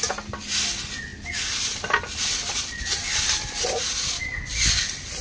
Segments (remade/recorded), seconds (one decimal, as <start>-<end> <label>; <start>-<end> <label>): 0.0-5.2 recorded